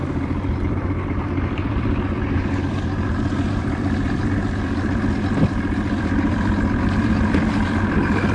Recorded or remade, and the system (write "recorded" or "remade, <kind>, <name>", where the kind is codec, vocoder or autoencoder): remade, vocoder, BigVGAN v2